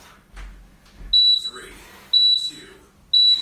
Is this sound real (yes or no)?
yes